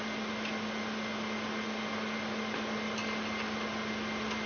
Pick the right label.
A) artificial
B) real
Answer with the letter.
B